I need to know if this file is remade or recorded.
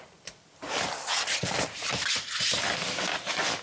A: recorded